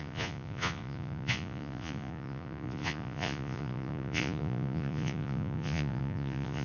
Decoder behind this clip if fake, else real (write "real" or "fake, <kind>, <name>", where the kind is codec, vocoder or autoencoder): fake, vocoder, Vocos